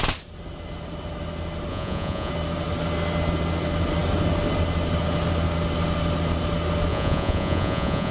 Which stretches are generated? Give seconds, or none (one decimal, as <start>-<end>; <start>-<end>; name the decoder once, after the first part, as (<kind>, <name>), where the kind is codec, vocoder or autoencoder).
1.7-2.3 (vocoder, Vocos); 6.9-8.1